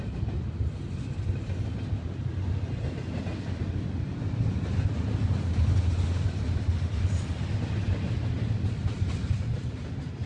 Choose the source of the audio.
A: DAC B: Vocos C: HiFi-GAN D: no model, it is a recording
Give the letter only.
D